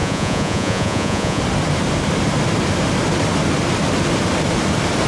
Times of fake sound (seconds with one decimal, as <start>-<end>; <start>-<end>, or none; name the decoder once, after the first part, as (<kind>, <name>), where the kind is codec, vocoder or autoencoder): 0.0-1.4 (vocoder, Vocos)